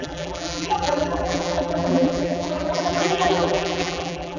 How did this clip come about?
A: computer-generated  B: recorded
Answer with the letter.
A